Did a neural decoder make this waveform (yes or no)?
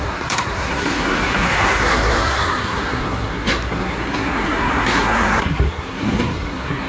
yes